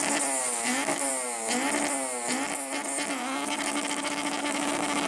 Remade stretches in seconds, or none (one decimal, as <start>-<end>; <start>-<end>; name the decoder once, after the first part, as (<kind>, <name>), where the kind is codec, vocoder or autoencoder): 0.4-1.1 (codec, DAC); 3.2-5.1